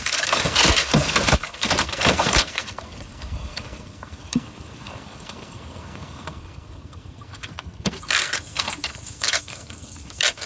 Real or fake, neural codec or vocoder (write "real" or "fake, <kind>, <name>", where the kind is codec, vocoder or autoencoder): fake, codec, SNAC